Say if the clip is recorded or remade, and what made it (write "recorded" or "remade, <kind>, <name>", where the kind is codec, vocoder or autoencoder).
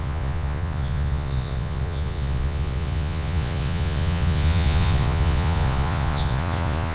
remade, vocoder, Vocos